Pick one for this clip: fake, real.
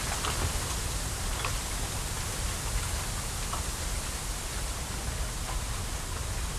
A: real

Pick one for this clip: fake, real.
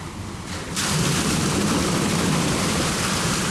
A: real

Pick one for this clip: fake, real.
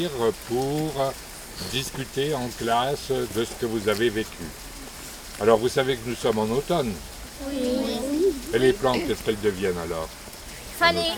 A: real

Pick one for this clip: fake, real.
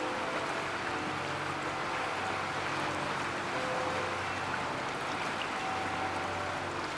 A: real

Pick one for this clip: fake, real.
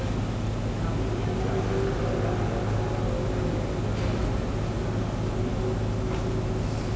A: real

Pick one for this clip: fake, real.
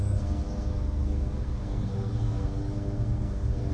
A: fake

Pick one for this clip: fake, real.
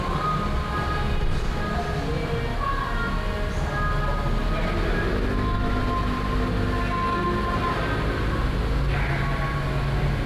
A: real